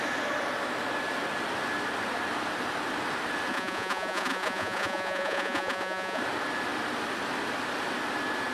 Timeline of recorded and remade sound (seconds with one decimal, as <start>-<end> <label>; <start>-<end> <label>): 0.0-3.5 recorded; 3.5-6.2 remade; 6.2-8.5 recorded